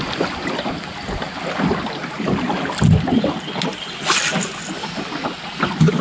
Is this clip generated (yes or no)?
no